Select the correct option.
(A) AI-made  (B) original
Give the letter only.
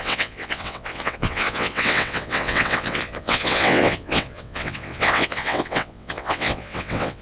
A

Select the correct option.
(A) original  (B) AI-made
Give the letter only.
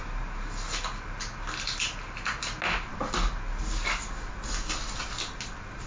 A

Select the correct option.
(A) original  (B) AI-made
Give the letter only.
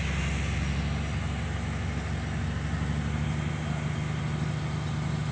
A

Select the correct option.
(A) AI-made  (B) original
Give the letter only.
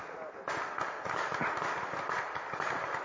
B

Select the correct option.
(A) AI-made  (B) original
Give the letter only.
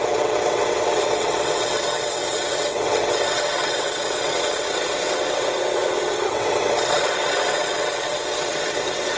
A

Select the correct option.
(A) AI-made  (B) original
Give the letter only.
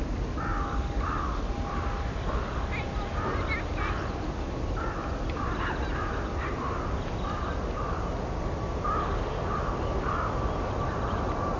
B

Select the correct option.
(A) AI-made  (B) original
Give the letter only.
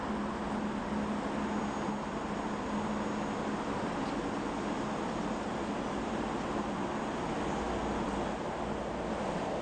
B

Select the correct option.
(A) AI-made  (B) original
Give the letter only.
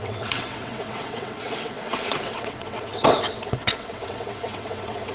A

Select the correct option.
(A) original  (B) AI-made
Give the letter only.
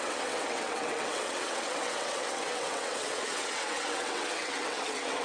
B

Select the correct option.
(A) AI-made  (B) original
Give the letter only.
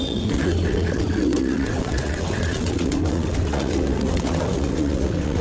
A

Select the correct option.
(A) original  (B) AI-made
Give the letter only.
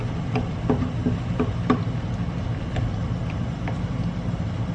A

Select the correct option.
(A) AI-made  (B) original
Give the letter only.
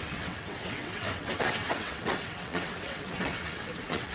A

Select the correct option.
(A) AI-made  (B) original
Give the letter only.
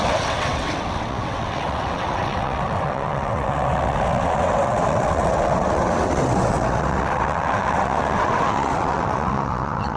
A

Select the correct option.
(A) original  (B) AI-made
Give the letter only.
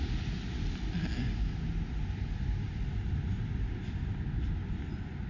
A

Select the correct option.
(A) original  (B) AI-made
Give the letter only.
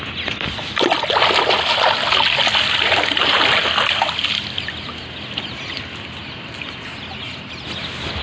A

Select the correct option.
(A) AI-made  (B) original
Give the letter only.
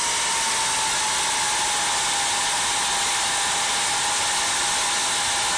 B